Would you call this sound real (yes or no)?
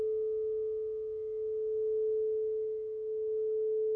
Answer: yes